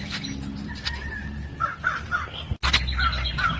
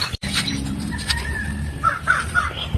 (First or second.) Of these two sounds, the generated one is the second